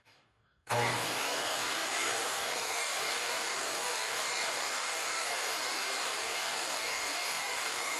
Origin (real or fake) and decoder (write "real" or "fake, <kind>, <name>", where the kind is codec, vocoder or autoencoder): fake, codec, DAC